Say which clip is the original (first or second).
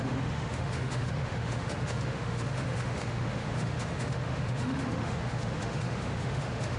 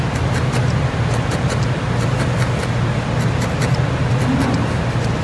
second